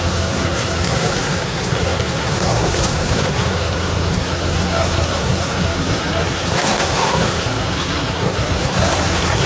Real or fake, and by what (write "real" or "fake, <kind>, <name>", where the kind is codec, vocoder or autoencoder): fake, codec, SNAC